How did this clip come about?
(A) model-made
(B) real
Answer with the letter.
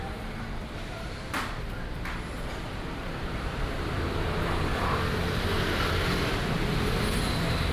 A